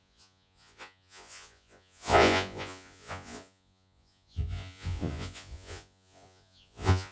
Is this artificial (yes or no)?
yes